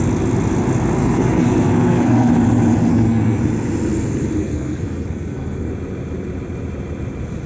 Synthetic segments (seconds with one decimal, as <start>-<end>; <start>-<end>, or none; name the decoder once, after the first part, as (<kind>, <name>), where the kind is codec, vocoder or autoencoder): 1.0-2.3 (codec, SNAC); 2.9-3.4; 4.4-5.7

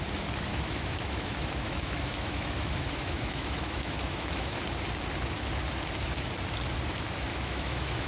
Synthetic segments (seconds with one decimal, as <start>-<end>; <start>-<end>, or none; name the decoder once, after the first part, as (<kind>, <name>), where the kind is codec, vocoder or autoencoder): 0.5-4.6 (autoencoder, DAC-VAE); 7.3-8.1

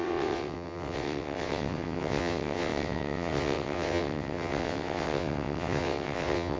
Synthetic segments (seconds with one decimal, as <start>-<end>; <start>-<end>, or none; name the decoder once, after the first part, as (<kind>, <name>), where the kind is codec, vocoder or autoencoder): 0.0-6.6 (vocoder, WaveNeXt)

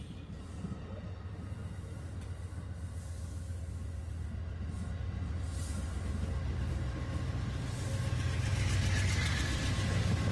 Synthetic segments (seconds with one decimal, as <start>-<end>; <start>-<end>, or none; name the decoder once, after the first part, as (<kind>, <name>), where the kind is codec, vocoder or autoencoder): none

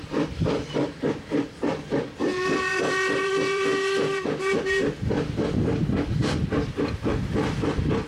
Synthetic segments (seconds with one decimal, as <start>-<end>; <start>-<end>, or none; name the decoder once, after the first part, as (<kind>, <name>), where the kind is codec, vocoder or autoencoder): 0.0-3.7 (vocoder, BigVGAN v2); 6.7-8.1

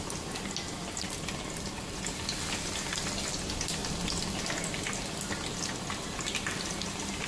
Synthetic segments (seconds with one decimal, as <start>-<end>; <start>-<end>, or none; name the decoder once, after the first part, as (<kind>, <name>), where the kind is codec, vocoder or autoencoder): none

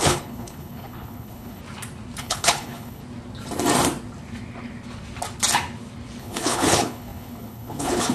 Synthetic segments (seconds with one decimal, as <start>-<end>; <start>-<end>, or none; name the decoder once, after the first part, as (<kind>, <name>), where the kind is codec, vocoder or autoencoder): 0.0-1.6 (codec, HILCodec); 2.2-3.0; 6.2-8.1